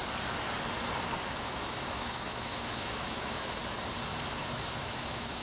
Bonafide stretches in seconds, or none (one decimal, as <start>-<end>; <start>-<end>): 0.0-1.4; 3.6-4.4

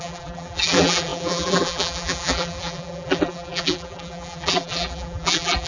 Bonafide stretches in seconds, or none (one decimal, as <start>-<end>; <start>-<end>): none

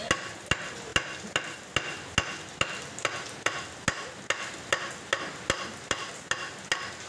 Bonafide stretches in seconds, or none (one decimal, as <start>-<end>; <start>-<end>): 0.0-7.1

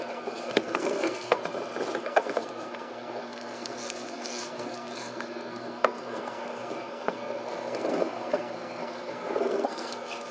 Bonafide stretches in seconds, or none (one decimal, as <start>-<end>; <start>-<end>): 1.4-2.0

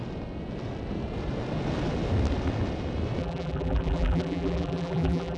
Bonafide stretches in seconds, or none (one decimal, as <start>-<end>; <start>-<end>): 0.0-3.2

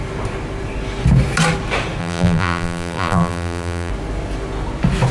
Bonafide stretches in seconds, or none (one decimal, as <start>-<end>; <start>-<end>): 0.0-2.0; 3.9-5.1